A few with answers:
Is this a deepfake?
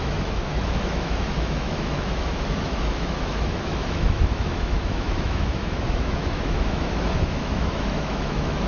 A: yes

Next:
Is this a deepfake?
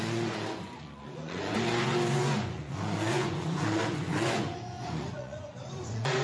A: yes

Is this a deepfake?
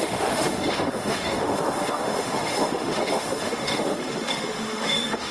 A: yes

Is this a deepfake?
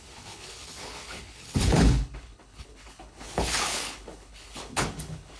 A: yes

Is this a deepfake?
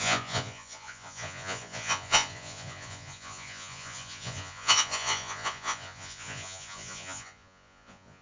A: yes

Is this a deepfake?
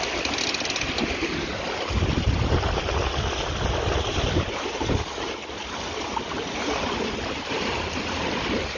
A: no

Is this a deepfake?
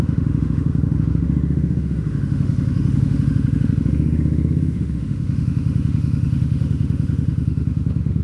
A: yes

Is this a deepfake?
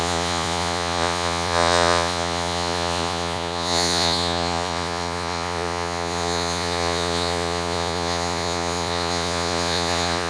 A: yes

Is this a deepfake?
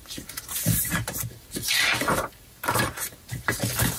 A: no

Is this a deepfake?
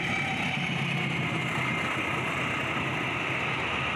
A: no